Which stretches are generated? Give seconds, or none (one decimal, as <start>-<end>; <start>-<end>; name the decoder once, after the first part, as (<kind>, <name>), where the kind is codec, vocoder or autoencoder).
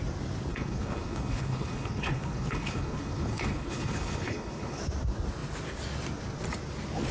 0.5-4.8 (codec, HILCodec)